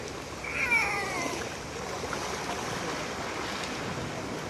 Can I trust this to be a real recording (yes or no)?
yes